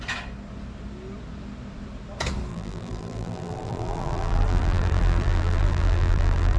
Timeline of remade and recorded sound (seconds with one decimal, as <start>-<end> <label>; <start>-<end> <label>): 0.0-2.5 recorded; 2.5-6.6 remade